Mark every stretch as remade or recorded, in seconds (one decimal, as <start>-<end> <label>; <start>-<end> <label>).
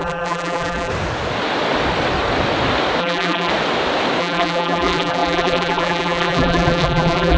0.0-0.9 remade; 0.9-3.0 recorded; 3.0-3.5 remade; 3.5-4.2 recorded; 4.2-7.4 remade